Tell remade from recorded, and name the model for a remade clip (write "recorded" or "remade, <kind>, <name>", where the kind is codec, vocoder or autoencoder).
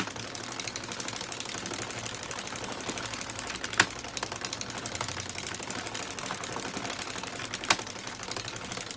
recorded